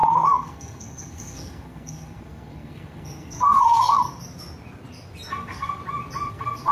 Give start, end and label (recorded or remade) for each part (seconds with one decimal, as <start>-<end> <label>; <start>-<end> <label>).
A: 0.0-4.0 remade; 4.0-5.3 recorded; 5.3-5.8 remade; 5.8-6.3 recorded; 6.3-6.7 remade